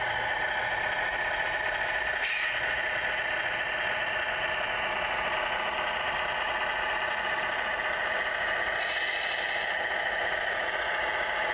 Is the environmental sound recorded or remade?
recorded